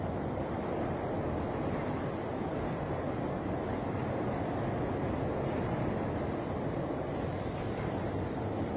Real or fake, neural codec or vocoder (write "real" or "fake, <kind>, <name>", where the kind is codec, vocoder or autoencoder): real